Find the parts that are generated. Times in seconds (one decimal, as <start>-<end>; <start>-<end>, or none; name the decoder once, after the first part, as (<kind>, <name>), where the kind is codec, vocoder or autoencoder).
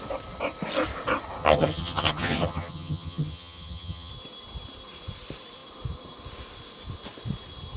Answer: 1.4-4.1 (vocoder, HiFi-GAN)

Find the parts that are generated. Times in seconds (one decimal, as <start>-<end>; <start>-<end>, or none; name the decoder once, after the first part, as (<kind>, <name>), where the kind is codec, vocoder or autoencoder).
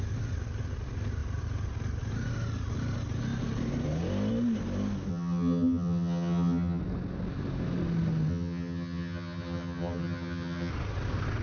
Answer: 5.1-6.8 (vocoder, HiFi-GAN); 8.3-10.7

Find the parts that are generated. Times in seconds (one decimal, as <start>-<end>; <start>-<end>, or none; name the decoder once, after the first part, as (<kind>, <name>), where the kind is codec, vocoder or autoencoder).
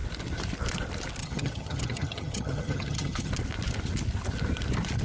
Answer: 1.2-3.3 (vocoder, HiFi-GAN)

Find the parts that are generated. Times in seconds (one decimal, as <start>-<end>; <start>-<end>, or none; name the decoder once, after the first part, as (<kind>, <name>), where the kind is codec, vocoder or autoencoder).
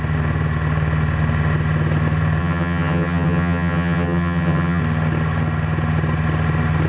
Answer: 2.4-4.8 (vocoder, HiFi-GAN)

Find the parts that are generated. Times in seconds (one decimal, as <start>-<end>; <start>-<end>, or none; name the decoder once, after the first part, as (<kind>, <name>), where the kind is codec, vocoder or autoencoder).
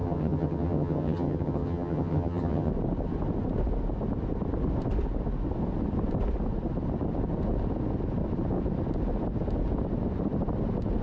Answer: 0.0-2.7 (vocoder, HiFi-GAN)